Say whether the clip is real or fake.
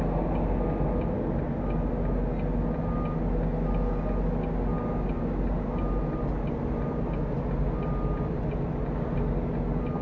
real